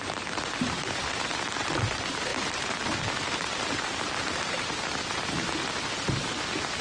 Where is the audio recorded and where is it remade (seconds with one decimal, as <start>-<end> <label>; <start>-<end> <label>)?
0.0-6.8 remade

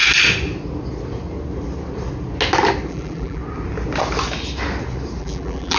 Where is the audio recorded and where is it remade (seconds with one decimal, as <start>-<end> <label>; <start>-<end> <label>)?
0.0-2.9 recorded; 2.9-3.4 remade; 3.4-5.2 recorded; 5.2-5.8 remade

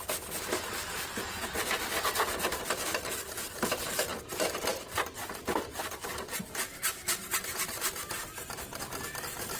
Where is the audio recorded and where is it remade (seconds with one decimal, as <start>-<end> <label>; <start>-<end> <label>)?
0.0-6.7 recorded; 6.7-7.7 remade; 7.7-9.6 recorded

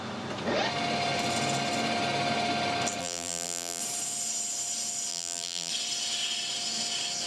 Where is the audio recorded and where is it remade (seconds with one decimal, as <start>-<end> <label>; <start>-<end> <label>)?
0.0-3.0 recorded; 3.0-3.8 remade; 3.8-5.1 recorded; 5.1-5.7 remade; 5.7-7.3 recorded

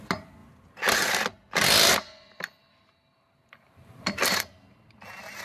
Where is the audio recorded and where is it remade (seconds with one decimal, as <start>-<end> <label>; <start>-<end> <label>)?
0.0-2.7 recorded; 2.7-5.0 remade; 5.0-5.4 recorded

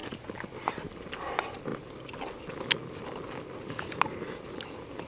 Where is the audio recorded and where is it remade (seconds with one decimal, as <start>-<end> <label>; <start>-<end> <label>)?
0.0-1.7 recorded; 1.7-2.2 remade; 2.2-5.1 recorded

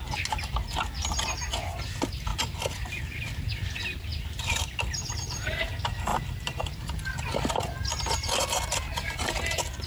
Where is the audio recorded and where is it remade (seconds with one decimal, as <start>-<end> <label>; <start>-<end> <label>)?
0.0-2.3 recorded; 2.3-3.0 remade; 3.0-4.1 recorded; 4.1-5.6 remade; 5.6-6.1 recorded; 6.1-7.4 remade; 7.4-9.9 recorded